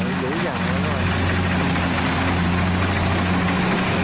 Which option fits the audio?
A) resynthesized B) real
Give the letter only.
B